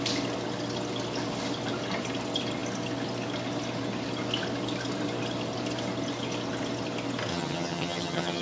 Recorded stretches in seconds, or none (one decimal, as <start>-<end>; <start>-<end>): 0.0-7.3